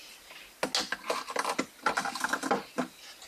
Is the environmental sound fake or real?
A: real